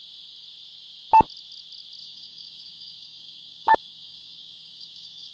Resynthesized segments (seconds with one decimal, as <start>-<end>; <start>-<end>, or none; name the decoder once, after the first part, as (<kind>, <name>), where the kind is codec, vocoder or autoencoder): 2.0-5.3 (codec, DAC)